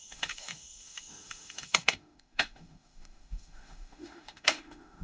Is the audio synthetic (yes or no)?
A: yes